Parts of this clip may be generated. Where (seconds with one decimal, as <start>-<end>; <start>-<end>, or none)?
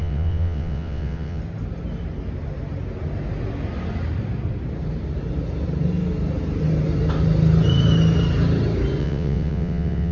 0.0-1.4; 9.0-10.1